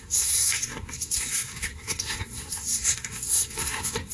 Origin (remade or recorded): remade